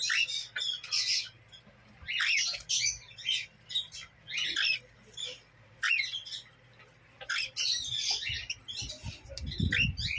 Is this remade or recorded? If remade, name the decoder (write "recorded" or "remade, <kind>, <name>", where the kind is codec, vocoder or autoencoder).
recorded